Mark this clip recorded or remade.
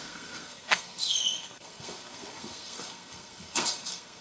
remade